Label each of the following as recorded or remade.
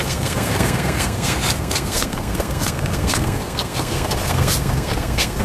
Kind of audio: remade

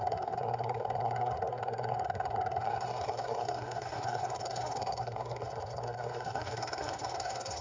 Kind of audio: remade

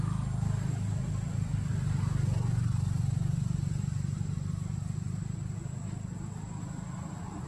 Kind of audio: recorded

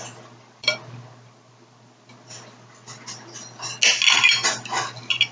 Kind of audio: recorded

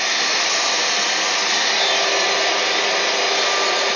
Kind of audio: recorded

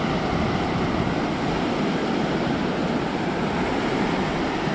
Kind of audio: recorded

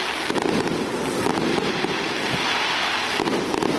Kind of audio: recorded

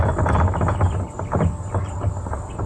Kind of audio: recorded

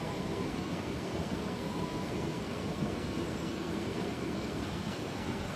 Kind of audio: remade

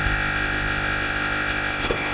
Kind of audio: remade